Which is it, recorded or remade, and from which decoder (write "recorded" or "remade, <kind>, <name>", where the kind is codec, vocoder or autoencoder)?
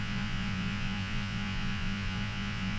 remade, vocoder, Vocos